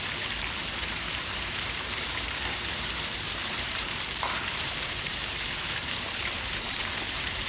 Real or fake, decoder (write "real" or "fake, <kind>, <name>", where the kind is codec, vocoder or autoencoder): fake, vocoder, BigVGAN v2